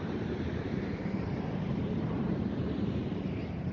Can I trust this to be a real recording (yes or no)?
no